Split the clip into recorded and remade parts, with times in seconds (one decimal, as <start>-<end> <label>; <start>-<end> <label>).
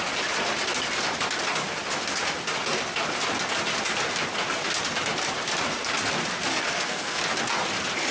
0.0-6.5 recorded; 6.5-7.2 remade; 7.2-8.1 recorded